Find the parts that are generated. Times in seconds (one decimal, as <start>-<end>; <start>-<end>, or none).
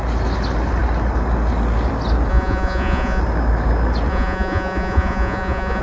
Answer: 2.3-3.2; 4.1-5.8